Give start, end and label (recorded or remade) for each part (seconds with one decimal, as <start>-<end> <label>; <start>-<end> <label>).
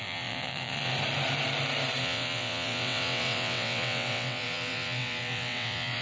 0.0-0.9 remade; 0.9-2.0 recorded; 2.0-6.0 remade